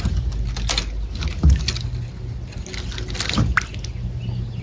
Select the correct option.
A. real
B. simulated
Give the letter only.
A